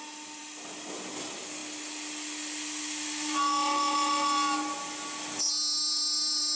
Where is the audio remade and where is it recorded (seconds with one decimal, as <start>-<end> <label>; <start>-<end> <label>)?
0.0-6.6 recorded